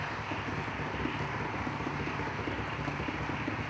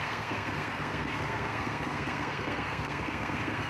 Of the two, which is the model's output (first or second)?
second